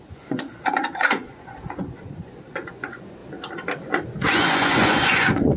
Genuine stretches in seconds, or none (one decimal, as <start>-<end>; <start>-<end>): 3.2-4.3